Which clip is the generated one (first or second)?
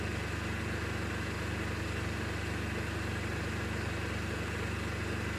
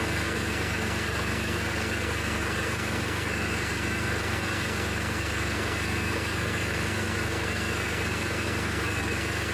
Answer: second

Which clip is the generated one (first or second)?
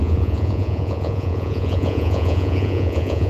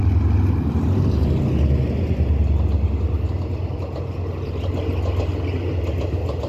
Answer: first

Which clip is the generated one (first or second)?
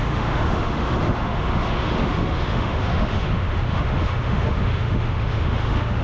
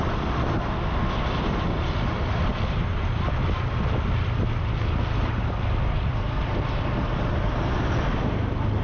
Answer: first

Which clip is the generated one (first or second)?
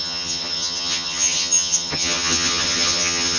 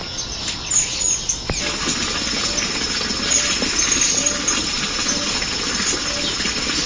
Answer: first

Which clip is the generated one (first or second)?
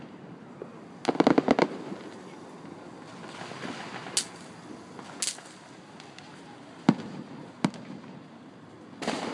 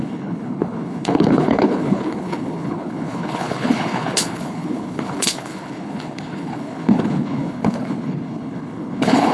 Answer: second